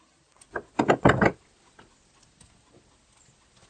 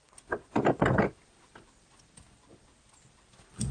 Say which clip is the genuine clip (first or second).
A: second